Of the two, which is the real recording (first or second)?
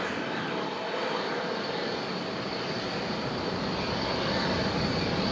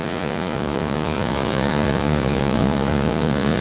first